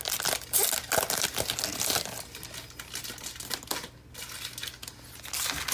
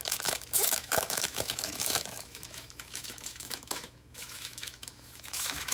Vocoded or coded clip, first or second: second